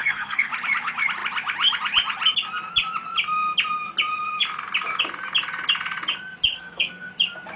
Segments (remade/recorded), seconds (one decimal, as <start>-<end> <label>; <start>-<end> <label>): 0.0-0.5 remade; 0.5-6.5 recorded; 6.5-7.1 remade; 7.1-7.6 recorded